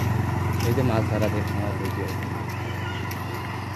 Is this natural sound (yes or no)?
yes